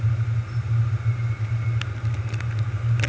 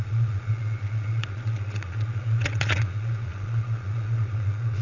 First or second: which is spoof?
second